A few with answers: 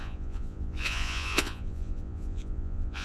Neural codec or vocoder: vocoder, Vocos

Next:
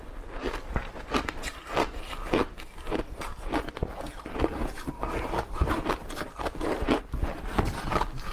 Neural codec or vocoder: none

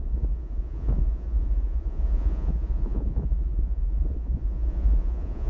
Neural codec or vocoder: vocoder, Vocos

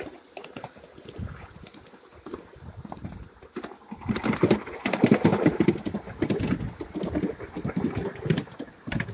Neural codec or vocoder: none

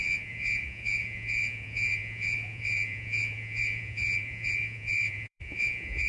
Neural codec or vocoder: vocoder, Vocos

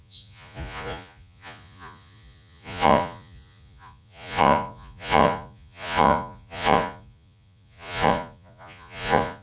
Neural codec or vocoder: vocoder, Vocos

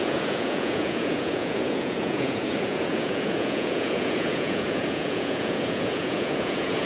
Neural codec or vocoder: vocoder, Vocos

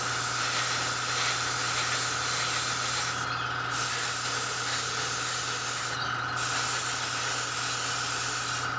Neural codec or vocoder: none